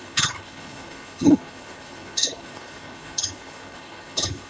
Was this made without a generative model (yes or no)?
no